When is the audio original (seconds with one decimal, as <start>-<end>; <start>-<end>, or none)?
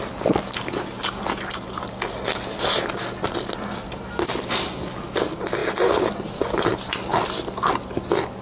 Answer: 0.0-8.4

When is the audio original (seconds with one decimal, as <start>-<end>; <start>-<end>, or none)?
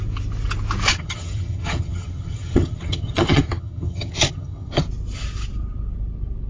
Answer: 0.0-0.9; 4.8-6.5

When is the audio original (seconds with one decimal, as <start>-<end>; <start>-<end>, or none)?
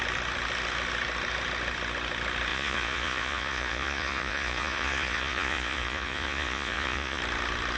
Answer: 0.0-2.5; 7.2-7.8